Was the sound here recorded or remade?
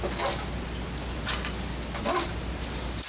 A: recorded